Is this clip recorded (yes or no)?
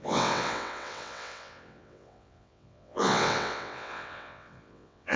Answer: no